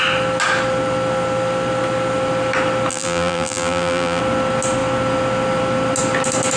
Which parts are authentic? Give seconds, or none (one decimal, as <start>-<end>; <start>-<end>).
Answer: 0.0-2.9; 4.2-6.6

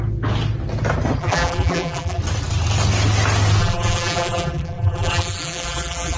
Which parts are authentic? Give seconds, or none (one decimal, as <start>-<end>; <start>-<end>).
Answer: 0.0-1.2; 2.2-3.6

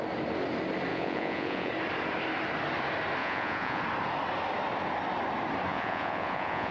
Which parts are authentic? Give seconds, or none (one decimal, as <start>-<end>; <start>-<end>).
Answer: 0.0-0.9; 1.7-3.2; 3.8-5.7

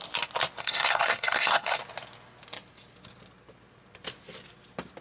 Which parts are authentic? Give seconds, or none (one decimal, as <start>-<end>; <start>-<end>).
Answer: 0.0-0.6; 1.8-5.0

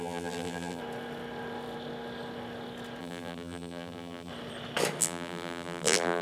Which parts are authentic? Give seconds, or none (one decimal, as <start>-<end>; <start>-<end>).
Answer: 0.8-3.0; 4.3-5.0

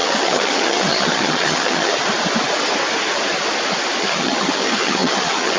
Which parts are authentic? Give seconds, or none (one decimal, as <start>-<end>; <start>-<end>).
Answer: 1.9-4.0